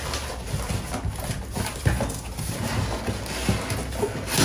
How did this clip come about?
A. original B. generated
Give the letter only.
A